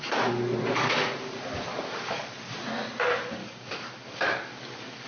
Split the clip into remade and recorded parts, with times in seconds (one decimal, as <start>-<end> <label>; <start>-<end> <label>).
0.0-1.7 recorded; 1.7-2.3 remade; 2.3-3.4 recorded; 3.4-5.1 remade